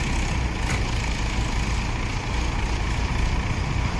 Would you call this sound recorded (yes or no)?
yes